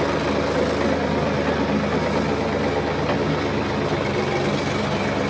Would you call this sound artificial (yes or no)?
no